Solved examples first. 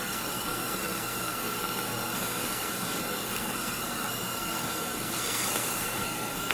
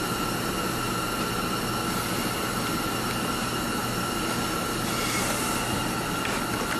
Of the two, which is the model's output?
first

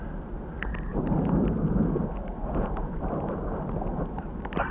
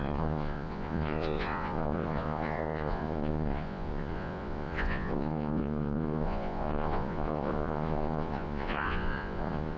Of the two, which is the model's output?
second